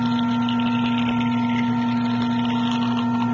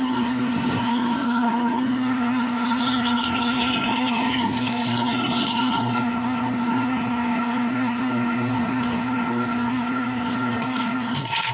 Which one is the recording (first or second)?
first